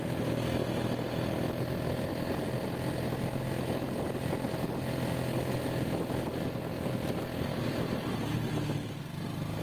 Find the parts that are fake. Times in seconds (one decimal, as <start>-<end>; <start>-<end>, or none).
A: 6.7-8.5